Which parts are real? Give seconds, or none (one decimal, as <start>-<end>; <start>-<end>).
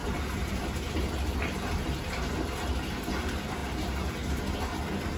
0.9-3.6; 4.4-5.2